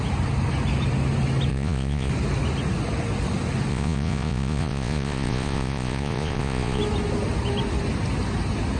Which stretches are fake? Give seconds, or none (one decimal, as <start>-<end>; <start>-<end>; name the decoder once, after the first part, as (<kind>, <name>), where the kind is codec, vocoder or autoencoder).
1.5-2.1 (vocoder, Vocos); 3.7-6.8